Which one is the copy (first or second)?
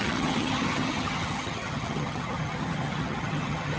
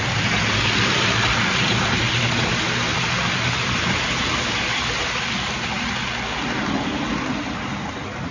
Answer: first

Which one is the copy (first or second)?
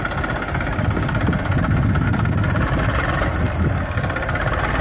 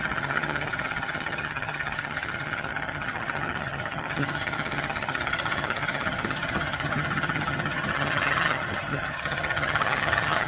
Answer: second